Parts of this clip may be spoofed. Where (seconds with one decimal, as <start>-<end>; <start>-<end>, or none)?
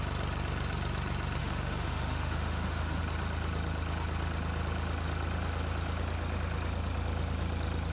1.4-3.0